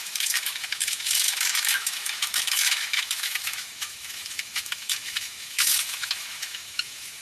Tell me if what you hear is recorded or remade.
remade